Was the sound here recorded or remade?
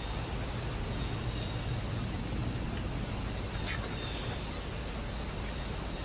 recorded